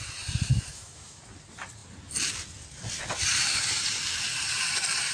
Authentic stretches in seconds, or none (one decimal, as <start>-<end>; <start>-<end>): 0.0-0.5; 1.2-5.1